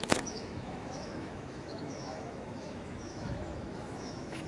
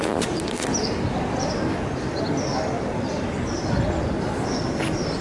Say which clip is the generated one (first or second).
first